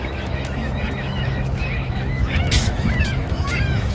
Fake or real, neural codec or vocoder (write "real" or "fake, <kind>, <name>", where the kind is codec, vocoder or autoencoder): fake, autoencoder, DAC-VAE